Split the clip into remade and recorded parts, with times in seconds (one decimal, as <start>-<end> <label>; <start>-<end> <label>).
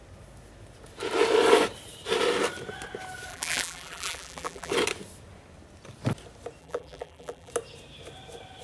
0.0-3.3 recorded; 3.3-4.7 remade; 4.7-6.6 recorded; 6.6-7.5 remade; 7.5-8.6 recorded